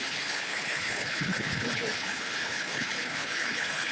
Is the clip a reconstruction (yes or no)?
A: yes